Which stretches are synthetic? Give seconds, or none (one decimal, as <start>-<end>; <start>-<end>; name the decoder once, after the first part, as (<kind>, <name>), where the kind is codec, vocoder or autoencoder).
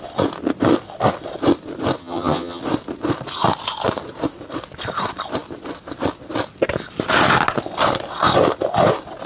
2.0-2.6 (vocoder, HiFi-GAN)